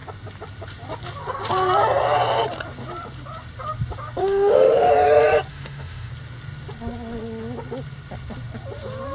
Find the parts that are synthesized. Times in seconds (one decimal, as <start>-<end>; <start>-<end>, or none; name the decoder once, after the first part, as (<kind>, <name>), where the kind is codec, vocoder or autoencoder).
4.2-4.9 (autoencoder, DAC-VAE); 5.5-6.1